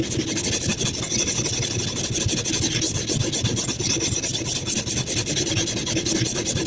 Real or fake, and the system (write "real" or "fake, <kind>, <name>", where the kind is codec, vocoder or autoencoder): real